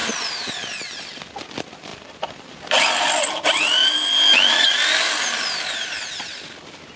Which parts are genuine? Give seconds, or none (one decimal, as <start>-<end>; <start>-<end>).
0.0-1.0; 3.8-4.9